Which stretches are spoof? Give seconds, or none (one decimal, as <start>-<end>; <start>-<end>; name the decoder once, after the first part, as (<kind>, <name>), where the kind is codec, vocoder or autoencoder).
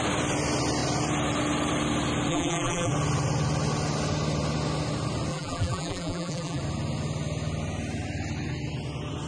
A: 2.3-2.9 (vocoder, BigVGAN v2); 5.3-6.6